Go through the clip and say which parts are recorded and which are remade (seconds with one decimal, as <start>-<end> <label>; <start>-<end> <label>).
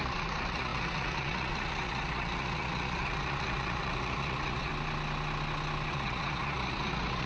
0.0-4.7 remade; 4.7-5.9 recorded; 5.9-7.3 remade